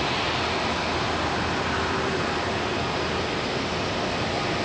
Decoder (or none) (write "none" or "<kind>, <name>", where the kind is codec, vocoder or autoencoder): none